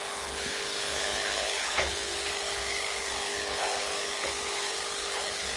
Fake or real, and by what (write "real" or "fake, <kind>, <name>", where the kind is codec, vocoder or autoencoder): fake, codec, HILCodec